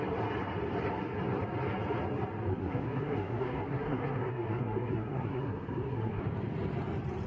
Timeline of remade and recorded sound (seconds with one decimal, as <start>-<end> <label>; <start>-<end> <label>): 0.0-2.5 recorded; 2.5-6.2 remade; 6.2-7.3 recorded

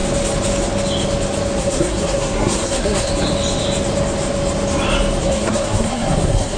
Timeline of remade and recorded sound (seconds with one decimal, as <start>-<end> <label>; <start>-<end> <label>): 0.0-1.6 recorded; 1.6-3.1 remade; 3.1-5.2 recorded; 5.2-6.6 remade

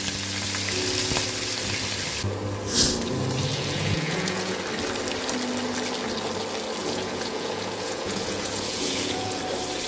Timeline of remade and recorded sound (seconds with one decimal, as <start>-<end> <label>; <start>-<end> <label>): 0.0-3.5 recorded; 3.5-4.6 remade; 4.6-6.8 recorded; 6.8-9.4 remade; 9.4-9.9 recorded

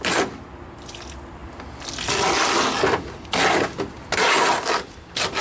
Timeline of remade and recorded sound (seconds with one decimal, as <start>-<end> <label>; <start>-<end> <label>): 0.0-5.4 recorded

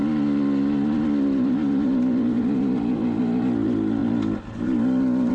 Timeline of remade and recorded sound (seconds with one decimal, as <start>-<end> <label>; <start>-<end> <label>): 0.0-5.3 recorded

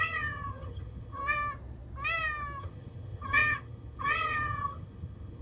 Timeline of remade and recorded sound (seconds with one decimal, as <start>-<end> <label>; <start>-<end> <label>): 0.0-1.2 remade; 1.2-2.6 recorded; 2.6-5.4 remade

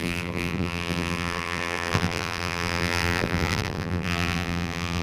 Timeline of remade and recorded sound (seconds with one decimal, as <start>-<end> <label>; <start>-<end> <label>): 0.0-5.0 remade

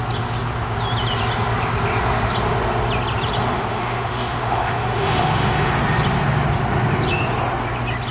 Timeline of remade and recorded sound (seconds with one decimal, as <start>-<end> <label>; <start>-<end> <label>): 0.0-3.7 recorded; 3.7-5.7 remade; 5.7-8.1 recorded